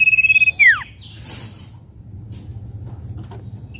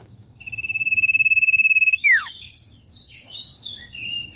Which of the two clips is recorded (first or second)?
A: first